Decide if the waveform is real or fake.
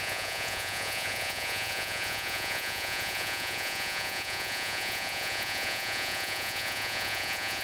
fake